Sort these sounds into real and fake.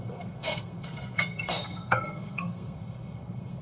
fake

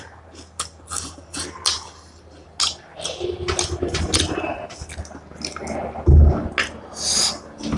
real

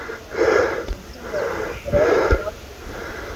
real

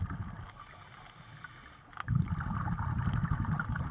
real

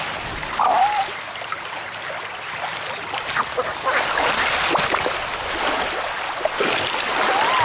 real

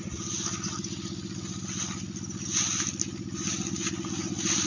real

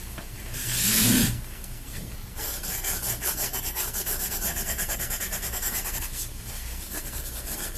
fake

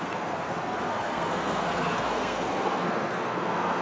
fake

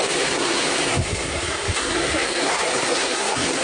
fake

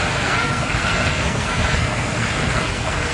fake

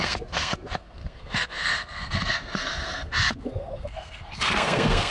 fake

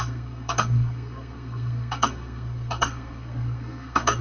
fake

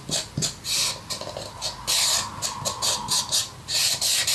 real